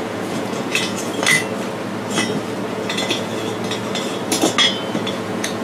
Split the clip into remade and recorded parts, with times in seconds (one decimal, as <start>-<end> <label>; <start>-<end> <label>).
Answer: 0.0-1.1 remade; 1.1-2.7 recorded; 2.7-3.3 remade; 3.3-5.1 recorded; 5.1-5.6 remade